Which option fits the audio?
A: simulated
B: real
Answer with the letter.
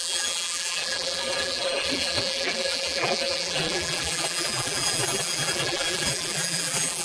A